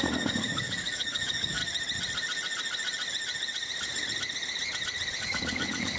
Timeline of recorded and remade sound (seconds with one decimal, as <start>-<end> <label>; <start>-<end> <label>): 0.0-1.6 remade; 1.6-5.2 recorded; 5.2-6.0 remade